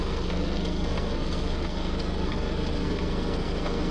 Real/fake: fake